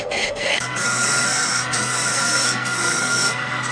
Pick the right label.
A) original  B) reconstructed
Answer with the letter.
B